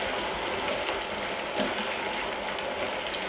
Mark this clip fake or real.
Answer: real